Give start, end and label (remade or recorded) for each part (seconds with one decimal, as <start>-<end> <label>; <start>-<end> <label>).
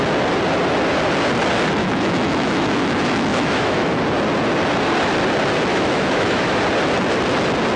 0.0-1.8 recorded; 1.8-4.0 remade; 4.0-5.7 recorded; 5.7-6.6 remade; 6.6-7.8 recorded